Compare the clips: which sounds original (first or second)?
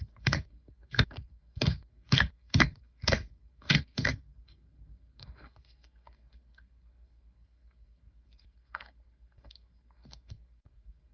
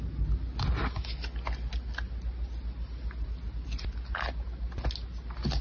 second